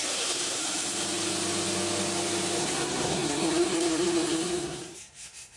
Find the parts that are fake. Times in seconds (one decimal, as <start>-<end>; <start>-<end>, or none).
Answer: 0.0-0.6; 2.6-5.6